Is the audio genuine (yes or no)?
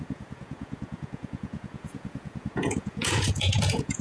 no